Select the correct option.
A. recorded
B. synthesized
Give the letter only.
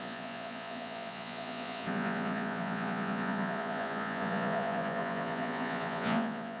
B